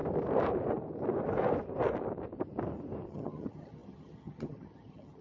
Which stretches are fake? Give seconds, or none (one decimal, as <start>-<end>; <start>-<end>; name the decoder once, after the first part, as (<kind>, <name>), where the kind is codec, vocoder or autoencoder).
3.1-5.2 (vocoder, HiFi-GAN)